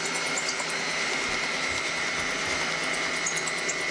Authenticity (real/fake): real